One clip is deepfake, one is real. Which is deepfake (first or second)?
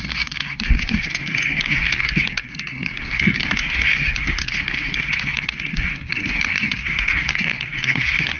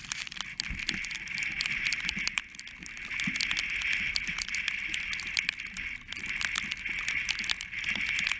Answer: first